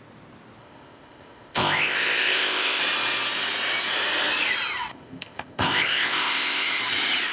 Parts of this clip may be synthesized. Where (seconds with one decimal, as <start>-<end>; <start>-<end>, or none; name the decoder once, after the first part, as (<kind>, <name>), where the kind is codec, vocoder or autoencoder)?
0.6-2.8 (codec, ZipCodec); 4.9-6.8